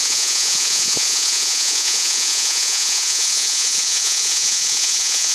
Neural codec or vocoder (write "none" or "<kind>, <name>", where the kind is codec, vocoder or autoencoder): vocoder, Vocos